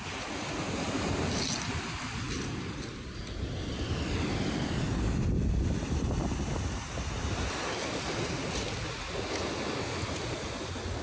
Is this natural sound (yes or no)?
yes